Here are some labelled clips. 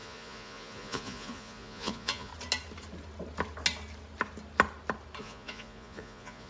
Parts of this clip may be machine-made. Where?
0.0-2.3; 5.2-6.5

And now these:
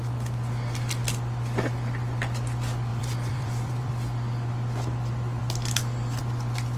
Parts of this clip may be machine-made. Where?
2.9-3.9